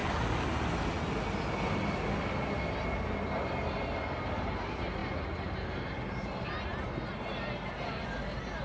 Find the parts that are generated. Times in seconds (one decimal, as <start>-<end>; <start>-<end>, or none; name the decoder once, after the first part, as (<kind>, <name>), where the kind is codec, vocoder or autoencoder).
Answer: none